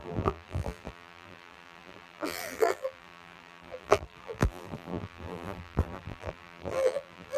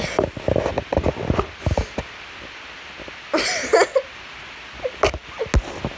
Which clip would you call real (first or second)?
second